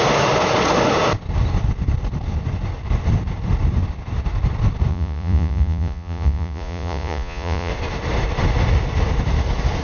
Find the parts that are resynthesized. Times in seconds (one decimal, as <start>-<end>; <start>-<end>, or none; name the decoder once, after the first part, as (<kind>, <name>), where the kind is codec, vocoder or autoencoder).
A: 4.9-7.7 (vocoder, Vocos)